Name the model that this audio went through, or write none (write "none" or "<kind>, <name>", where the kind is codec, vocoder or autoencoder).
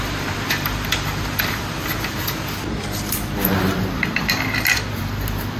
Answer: vocoder, BigVGAN v2